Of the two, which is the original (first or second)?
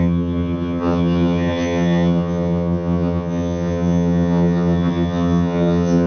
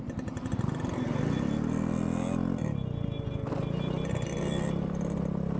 second